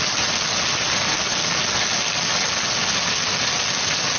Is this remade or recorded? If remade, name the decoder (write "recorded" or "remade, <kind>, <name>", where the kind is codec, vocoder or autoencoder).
recorded